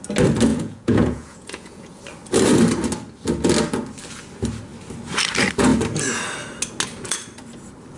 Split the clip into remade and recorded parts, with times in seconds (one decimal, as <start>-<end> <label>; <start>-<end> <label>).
0.0-0.5 recorded; 0.5-2.0 remade; 2.0-8.0 recorded